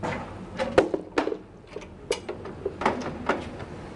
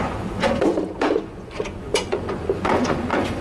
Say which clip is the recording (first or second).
first